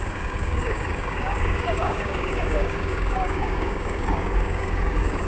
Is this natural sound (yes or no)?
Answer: no